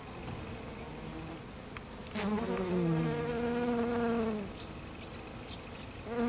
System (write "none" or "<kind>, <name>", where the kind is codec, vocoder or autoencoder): none